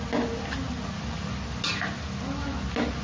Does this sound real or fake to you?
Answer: real